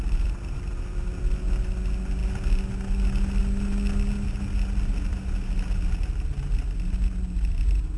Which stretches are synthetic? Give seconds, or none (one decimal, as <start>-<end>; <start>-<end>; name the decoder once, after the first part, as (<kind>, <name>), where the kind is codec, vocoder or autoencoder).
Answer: none